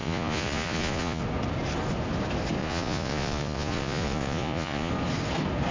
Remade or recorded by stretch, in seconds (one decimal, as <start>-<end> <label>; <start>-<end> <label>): 0.0-1.2 remade; 1.2-2.6 recorded; 2.6-4.9 remade; 4.9-5.7 recorded